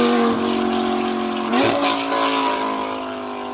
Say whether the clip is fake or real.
real